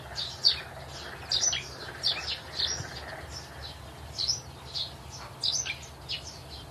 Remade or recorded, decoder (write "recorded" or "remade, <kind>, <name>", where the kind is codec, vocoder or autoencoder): recorded